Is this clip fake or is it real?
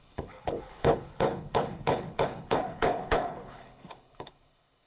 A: fake